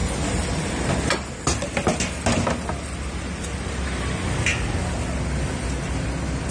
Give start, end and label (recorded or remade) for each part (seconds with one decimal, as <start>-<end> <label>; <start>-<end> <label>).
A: 0.0-6.5 recorded